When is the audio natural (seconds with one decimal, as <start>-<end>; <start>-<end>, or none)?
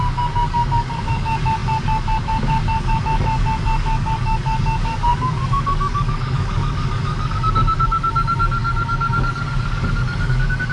none